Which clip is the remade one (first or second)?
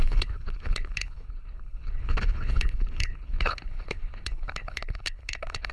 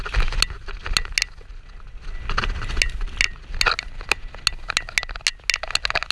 first